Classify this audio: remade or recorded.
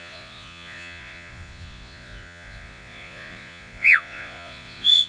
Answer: remade